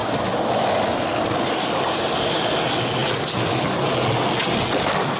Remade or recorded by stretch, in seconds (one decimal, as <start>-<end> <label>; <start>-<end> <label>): 0.0-5.2 recorded